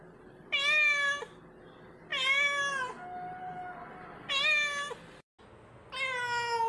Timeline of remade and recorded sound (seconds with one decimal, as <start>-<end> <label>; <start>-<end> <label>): 0.0-6.7 recorded